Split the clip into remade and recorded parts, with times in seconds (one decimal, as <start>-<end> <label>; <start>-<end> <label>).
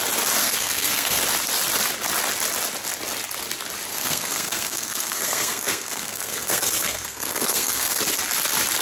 0.0-0.4 recorded; 0.4-1.2 remade; 1.2-3.9 recorded; 3.9-8.0 remade; 8.0-8.8 recorded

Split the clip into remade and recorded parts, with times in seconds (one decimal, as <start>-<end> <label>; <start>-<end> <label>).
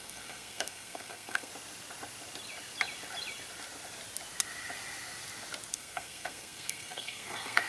0.0-1.5 remade; 1.5-5.7 recorded; 5.7-7.7 remade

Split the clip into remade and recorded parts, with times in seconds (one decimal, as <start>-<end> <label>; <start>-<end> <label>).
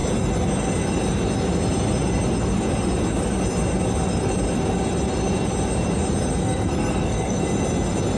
0.0-6.4 recorded; 6.4-7.4 remade; 7.4-8.2 recorded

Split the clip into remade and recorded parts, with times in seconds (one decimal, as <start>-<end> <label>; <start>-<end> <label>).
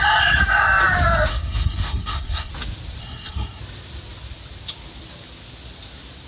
0.0-1.3 recorded; 1.3-2.5 remade; 2.5-3.0 recorded; 3.0-3.6 remade; 3.6-6.3 recorded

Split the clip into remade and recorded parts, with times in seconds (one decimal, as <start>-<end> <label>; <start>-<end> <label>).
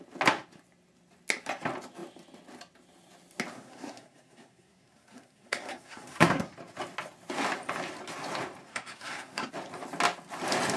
0.0-3.5 recorded; 3.5-6.5 remade; 6.5-8.7 recorded; 8.7-9.5 remade; 9.5-10.8 recorded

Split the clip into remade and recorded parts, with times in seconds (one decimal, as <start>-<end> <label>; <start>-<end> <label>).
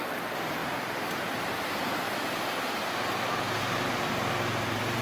0.0-5.0 recorded